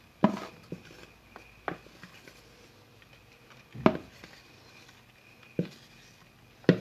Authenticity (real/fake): real